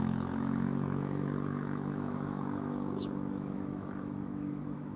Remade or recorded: remade